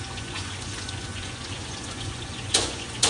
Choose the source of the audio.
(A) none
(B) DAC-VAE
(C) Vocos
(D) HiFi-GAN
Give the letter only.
C